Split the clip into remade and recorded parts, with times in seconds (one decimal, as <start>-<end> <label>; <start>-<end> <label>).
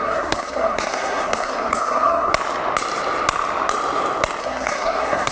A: 0.0-2.3 remade; 2.3-4.4 recorded; 4.4-5.3 remade